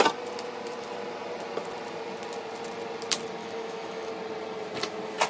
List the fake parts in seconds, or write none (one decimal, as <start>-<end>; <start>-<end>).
3.4-4.1